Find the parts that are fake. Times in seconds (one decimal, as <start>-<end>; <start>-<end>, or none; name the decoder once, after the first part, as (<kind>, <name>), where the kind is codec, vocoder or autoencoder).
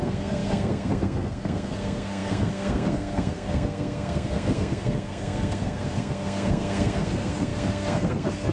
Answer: 0.0-8.5 (codec, SNAC)